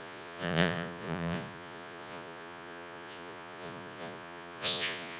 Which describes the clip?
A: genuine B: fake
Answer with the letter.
B